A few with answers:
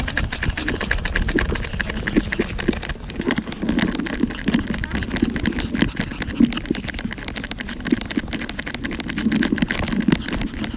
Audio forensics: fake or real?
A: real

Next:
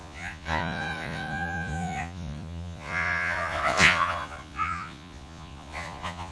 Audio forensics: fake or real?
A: fake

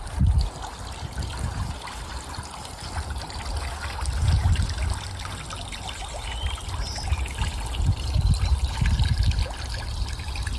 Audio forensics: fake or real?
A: real